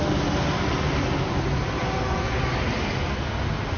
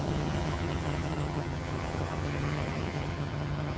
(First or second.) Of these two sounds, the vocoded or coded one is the second